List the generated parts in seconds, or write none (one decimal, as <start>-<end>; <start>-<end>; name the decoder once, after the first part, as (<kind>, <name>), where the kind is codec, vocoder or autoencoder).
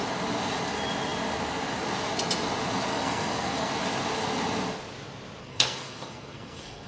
2.9-3.7 (codec, SNAC); 5.4-6.9